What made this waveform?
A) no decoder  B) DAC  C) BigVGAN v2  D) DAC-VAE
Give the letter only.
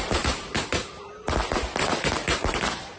C